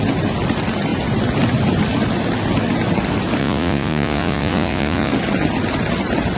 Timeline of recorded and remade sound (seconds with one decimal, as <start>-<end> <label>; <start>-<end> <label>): 0.0-3.4 recorded; 3.4-5.1 remade; 5.1-6.4 recorded